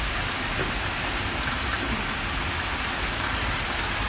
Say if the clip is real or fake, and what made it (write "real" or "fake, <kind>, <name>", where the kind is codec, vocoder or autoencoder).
real